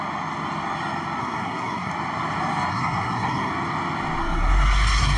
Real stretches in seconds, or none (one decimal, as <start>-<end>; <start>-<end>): 0.0-1.2; 1.9-2.7; 3.5-4.2